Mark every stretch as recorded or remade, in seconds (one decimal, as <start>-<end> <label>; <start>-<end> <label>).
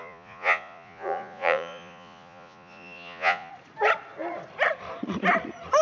0.0-3.5 remade; 3.5-5.8 recorded